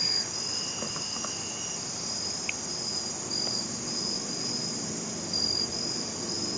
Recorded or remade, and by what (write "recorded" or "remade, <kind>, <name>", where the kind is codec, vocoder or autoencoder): recorded